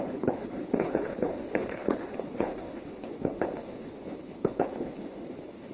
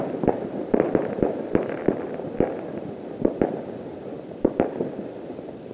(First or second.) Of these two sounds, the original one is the second